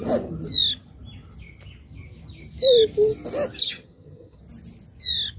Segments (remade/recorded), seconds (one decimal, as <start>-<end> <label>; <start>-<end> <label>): 0.0-3.6 recorded; 3.6-4.4 remade; 4.4-5.4 recorded